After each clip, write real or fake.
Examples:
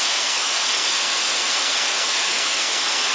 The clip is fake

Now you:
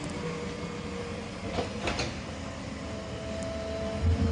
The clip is real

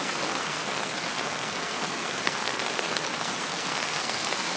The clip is fake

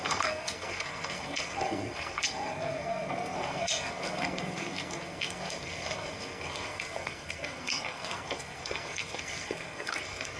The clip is fake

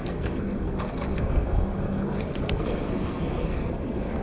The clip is fake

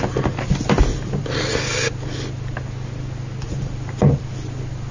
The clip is real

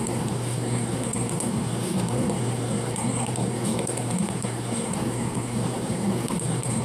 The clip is fake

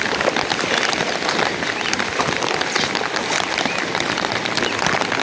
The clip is real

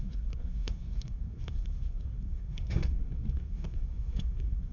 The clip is fake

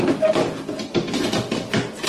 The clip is real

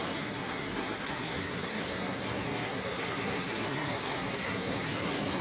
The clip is fake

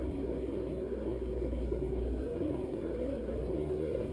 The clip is fake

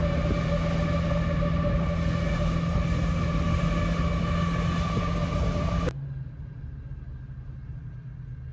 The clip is real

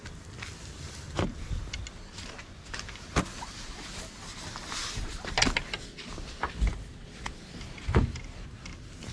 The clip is real